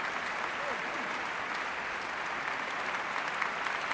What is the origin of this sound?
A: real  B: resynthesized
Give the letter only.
A